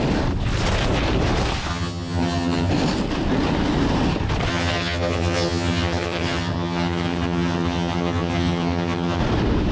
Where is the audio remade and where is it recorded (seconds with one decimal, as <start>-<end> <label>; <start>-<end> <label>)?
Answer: 0.0-1.7 recorded; 1.7-2.7 remade; 2.7-4.5 recorded; 4.5-9.2 remade; 9.2-9.7 recorded